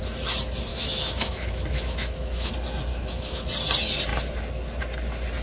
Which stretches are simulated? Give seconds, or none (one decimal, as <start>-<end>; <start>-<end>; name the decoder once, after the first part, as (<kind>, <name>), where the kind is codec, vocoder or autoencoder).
0.7-2.5 (autoencoder, DAC-VAE); 2.9-3.5